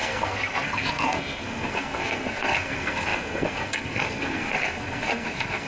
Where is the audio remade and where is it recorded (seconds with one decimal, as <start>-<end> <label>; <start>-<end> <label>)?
0.0-5.7 remade